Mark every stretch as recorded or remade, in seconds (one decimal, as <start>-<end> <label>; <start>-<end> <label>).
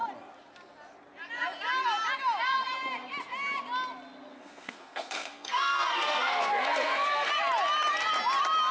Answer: 0.0-4.3 recorded; 4.3-7.3 remade; 7.3-8.7 recorded